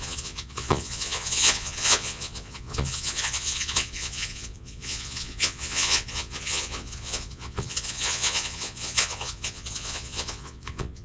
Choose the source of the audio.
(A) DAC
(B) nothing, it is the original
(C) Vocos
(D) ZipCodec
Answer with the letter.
C